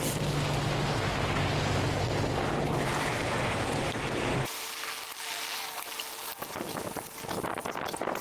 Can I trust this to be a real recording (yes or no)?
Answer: yes